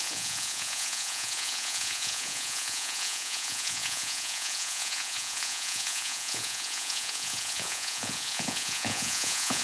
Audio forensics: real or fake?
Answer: fake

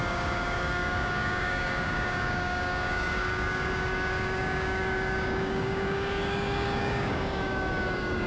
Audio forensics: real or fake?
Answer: fake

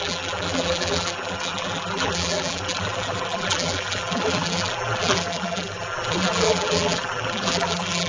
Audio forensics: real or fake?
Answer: fake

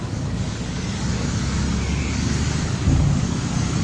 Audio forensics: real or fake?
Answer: fake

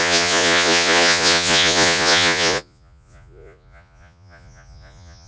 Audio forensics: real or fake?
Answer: fake